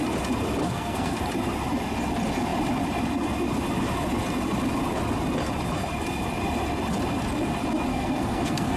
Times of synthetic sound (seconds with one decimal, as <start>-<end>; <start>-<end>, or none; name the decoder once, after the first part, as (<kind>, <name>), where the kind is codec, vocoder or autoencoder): 0.6-1.2 (codec, SNAC); 7.9-8.8